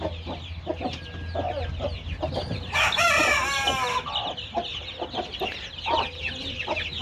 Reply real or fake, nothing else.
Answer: real